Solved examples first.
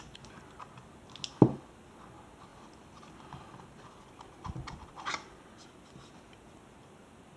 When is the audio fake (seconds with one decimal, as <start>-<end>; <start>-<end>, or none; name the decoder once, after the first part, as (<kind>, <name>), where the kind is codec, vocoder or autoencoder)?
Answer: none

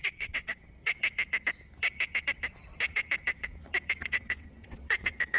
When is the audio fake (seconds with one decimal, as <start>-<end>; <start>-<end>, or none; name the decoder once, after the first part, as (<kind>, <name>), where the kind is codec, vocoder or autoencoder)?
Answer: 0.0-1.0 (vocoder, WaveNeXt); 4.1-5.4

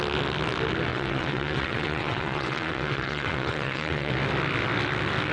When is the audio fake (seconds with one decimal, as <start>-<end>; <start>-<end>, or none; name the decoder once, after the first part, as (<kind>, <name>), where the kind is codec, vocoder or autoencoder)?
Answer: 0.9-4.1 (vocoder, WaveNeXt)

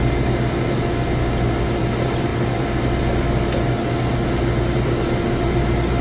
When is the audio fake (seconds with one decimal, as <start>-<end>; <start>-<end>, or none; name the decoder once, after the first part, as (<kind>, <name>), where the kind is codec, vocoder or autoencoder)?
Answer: none

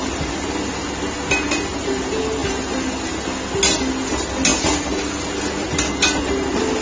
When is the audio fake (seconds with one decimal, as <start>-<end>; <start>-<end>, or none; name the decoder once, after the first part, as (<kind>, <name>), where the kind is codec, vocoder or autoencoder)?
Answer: none